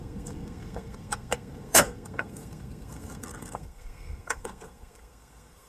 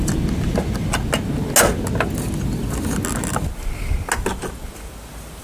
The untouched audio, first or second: second